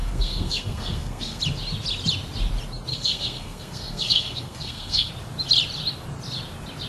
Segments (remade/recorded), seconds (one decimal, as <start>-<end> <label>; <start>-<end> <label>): 0.0-1.4 remade; 1.4-2.9 recorded; 2.9-5.1 remade; 5.1-6.9 recorded